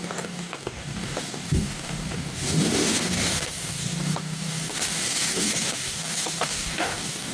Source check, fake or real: fake